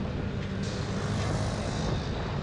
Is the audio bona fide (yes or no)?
yes